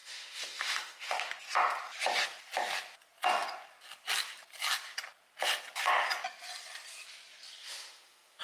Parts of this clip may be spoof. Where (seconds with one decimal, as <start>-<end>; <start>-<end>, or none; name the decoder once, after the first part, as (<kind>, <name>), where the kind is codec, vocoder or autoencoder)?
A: 0.0-1.3 (autoencoder, DAC-VAE); 7.6-8.4